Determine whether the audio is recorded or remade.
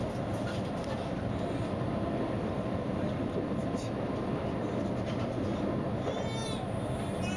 recorded